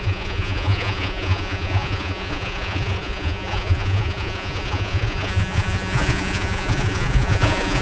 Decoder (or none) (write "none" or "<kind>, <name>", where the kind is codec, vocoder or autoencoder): vocoder, Vocos